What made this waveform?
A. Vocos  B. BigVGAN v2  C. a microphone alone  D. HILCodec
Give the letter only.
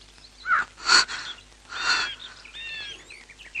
C